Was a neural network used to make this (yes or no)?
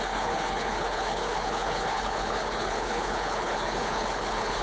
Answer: yes